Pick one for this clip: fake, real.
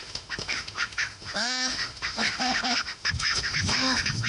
fake